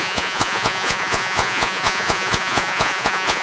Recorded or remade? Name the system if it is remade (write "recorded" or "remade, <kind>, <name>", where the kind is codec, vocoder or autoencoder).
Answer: remade, vocoder, Vocos